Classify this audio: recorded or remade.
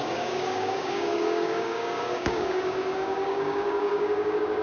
remade